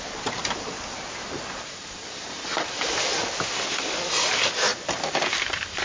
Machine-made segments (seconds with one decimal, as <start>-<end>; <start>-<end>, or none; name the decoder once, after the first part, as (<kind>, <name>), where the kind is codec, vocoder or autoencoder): 1.2-2.8 (vocoder, BigVGAN v2); 4.7-5.8